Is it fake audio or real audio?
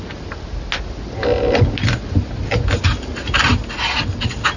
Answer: real